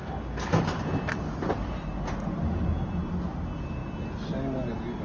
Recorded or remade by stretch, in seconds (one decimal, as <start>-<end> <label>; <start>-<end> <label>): 0.0-5.0 recorded